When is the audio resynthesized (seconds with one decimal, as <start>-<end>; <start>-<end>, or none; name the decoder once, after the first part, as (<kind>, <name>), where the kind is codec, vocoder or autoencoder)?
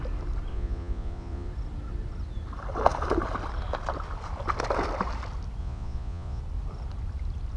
0.5-1.5 (vocoder, Vocos); 5.6-6.4